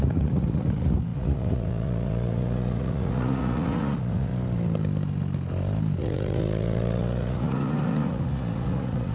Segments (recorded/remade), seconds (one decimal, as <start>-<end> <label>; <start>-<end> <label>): 0.0-4.3 remade; 4.3-6.0 recorded; 6.0-9.1 remade

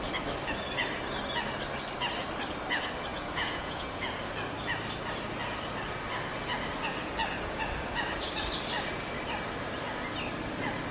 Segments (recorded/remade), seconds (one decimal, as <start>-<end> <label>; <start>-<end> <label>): 0.0-3.1 recorded; 3.1-4.1 remade; 4.1-10.9 recorded

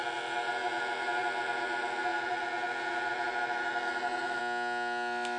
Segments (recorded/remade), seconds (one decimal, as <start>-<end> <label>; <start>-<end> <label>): 0.0-4.4 remade; 4.4-5.4 recorded